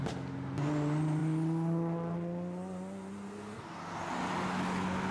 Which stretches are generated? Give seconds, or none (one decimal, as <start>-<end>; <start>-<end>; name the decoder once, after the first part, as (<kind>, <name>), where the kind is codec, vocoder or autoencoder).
none